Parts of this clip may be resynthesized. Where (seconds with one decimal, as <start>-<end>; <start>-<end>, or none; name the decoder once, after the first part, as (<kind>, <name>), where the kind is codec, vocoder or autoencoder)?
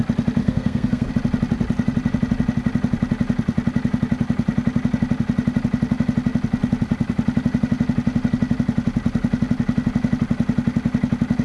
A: 0.4-1.1 (codec, SNAC)